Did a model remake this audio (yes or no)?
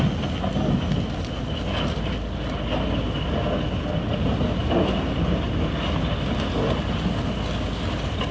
no